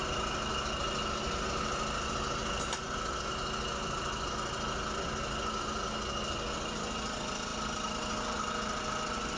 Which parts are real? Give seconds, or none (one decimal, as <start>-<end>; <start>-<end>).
0.0-9.4